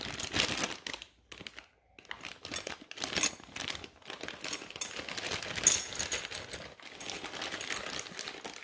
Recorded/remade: recorded